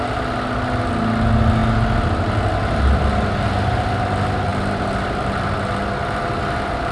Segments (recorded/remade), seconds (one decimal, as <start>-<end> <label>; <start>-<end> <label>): 0.0-6.9 recorded